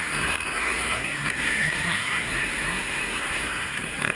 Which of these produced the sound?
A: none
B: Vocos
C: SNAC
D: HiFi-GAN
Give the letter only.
C